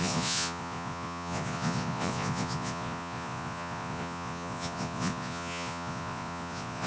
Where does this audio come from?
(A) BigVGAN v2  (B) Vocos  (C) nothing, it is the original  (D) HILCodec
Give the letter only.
B